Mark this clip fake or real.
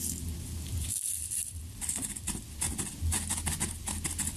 real